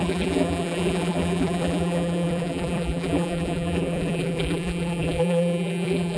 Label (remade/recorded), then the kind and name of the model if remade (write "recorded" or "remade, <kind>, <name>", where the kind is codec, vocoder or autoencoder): remade, vocoder, BigVGAN v2